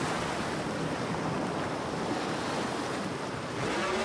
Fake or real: real